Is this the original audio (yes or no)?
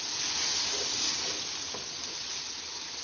yes